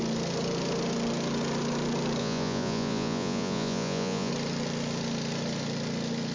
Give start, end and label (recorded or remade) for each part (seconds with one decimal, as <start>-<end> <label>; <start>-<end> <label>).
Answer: 0.0-2.2 recorded; 2.2-4.3 remade; 4.3-6.3 recorded